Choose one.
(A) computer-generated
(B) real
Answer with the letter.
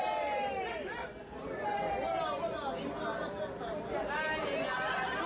B